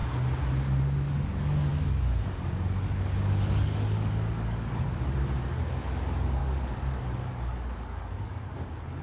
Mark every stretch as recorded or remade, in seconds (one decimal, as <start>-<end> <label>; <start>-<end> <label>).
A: 0.0-0.8 recorded; 0.8-9.0 remade